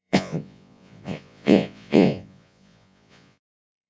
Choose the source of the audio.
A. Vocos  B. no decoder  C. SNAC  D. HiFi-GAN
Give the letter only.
A